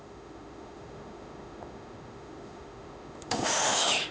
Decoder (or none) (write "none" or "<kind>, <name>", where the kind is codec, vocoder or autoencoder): autoencoder, DAC-VAE